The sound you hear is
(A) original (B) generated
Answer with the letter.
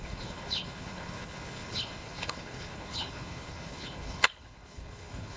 B